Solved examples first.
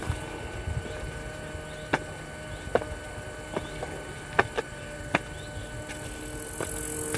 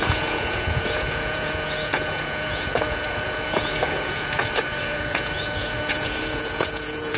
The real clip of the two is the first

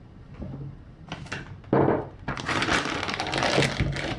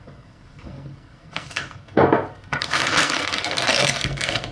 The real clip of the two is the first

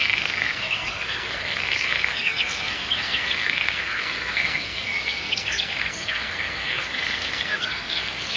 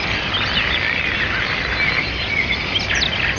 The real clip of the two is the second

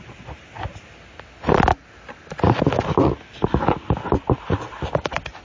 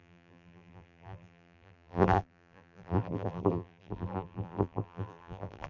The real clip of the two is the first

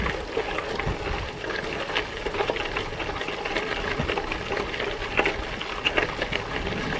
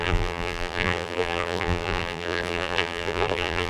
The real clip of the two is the first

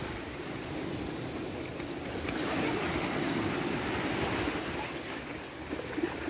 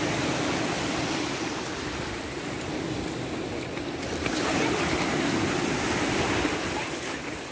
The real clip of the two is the second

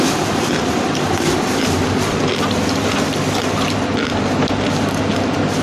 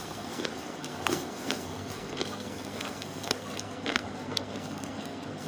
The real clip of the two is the first